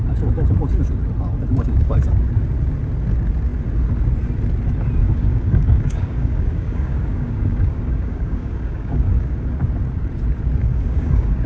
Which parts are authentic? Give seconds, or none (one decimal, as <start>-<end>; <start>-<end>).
0.0-5.0; 9.5-10.6